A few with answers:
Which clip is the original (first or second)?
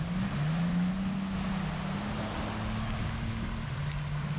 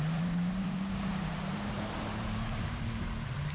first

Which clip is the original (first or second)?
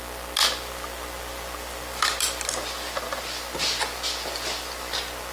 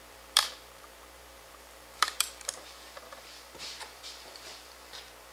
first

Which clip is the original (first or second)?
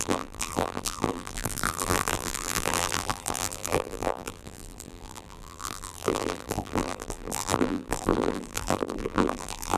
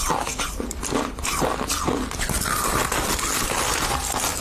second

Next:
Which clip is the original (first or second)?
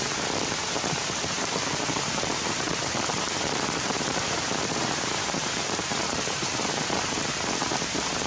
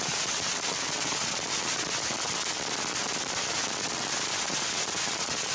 second